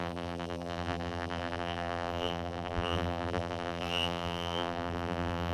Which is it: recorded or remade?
remade